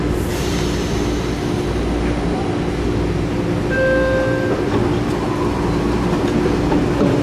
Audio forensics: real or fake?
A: real